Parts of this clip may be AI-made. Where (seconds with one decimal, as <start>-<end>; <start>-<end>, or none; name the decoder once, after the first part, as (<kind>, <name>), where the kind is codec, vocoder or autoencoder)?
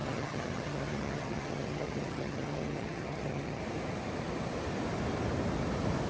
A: 0.0-3.6 (vocoder, HiFi-GAN)